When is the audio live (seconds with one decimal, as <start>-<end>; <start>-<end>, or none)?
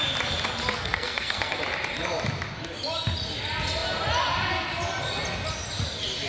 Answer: 0.0-0.7; 1.6-6.3